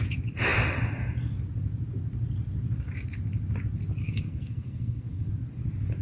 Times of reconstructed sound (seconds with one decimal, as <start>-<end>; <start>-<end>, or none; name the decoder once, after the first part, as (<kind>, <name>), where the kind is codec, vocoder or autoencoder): 4.0-5.3 (codec, SNAC)